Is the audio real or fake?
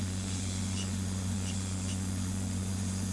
fake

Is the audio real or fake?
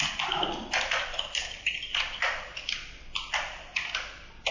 real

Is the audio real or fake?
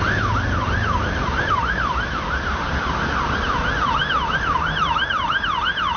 real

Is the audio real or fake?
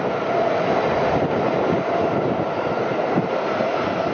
real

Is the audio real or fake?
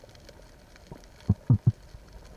real